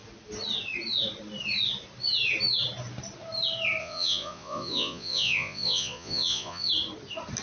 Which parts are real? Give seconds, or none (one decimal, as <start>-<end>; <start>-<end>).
0.0-3.8; 6.7-7.4